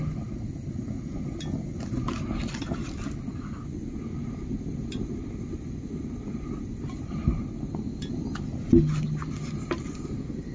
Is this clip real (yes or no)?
yes